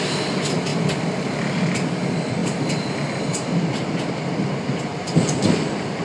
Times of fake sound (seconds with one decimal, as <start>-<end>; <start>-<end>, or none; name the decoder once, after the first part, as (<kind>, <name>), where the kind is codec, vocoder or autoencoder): none